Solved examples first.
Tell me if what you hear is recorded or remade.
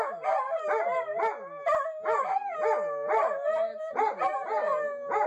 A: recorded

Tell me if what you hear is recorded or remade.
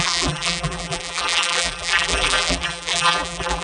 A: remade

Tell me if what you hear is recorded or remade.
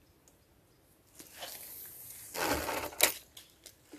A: recorded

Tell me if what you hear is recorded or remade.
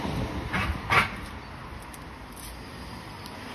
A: recorded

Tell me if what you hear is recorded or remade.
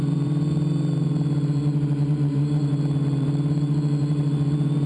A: remade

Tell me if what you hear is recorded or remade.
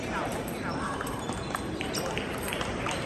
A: remade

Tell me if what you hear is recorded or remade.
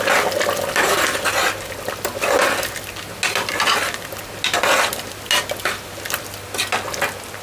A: recorded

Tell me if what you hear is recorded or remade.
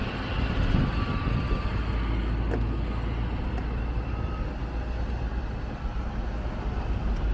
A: recorded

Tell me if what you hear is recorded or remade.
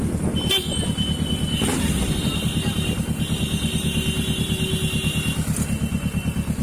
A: recorded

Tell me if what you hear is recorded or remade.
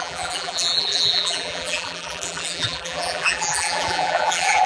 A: remade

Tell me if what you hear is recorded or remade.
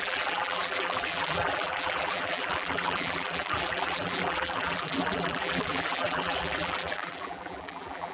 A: remade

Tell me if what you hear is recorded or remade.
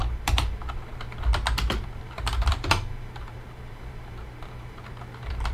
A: remade